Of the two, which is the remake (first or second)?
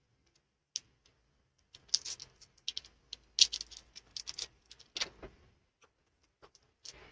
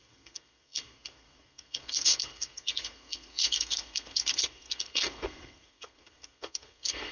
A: second